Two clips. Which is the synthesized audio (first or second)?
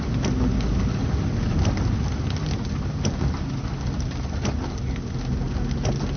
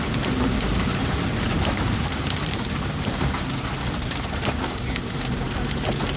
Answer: second